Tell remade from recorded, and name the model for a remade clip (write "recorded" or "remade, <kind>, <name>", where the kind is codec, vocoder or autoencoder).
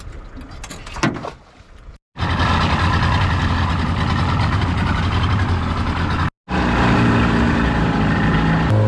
recorded